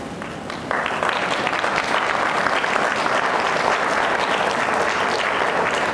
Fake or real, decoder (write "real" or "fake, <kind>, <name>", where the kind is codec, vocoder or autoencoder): real